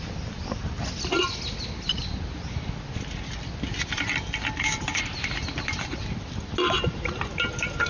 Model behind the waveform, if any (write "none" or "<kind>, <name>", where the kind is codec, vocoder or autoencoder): none